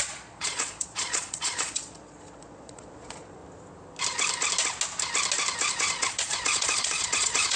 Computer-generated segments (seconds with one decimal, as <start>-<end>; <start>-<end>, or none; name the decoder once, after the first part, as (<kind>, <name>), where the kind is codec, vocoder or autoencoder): 0.0-3.4 (vocoder, Vocos); 5.7-7.6